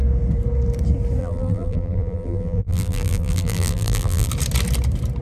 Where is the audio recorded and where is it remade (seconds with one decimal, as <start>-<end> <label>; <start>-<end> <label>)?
0.0-1.2 recorded; 1.2-4.3 remade; 4.3-5.2 recorded